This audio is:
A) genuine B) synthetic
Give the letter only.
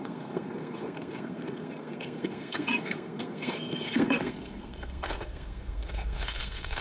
B